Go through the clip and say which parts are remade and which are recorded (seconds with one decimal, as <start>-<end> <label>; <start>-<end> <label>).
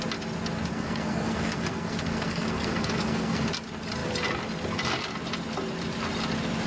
0.0-0.7 recorded; 0.7-3.5 remade; 3.5-6.7 recorded